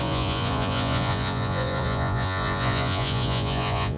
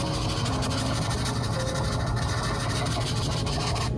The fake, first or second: first